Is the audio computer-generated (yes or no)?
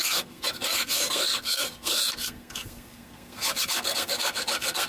yes